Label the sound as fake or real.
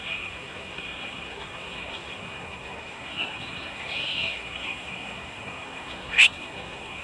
fake